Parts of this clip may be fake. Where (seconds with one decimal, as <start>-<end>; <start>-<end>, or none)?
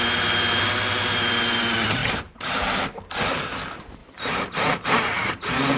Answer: 2.0-2.8; 4.0-5.8